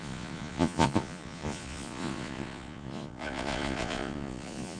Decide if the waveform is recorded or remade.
remade